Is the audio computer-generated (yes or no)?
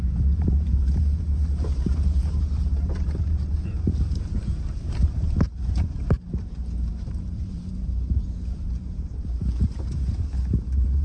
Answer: yes